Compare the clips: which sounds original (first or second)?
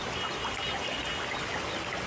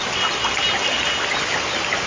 second